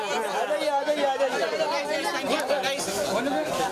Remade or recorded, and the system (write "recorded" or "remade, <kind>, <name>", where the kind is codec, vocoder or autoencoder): recorded